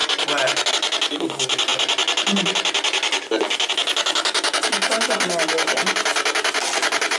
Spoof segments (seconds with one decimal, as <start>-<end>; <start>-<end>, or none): none